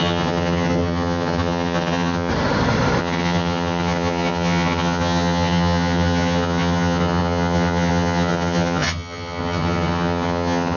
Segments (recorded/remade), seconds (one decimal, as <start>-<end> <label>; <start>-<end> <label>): 0.0-2.3 remade; 2.3-3.0 recorded; 3.0-10.8 remade